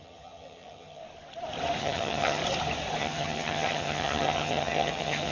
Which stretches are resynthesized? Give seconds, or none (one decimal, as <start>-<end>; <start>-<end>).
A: 0.0-1.0; 1.8-2.4; 3.0-5.3